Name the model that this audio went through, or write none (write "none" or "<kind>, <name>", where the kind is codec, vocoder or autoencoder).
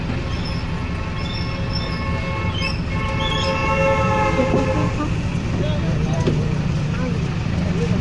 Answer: none